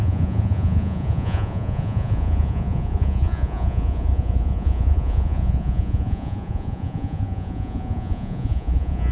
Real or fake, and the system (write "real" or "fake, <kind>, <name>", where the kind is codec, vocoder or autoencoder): fake, vocoder, Vocos